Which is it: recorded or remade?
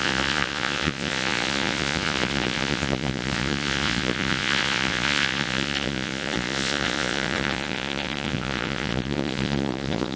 remade